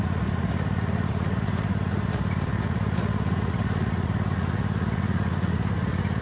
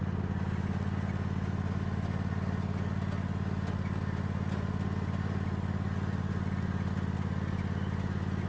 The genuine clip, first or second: second